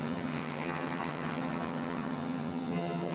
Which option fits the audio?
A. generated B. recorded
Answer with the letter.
A